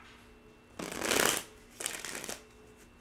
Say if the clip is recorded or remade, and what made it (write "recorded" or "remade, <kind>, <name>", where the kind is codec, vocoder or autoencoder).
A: recorded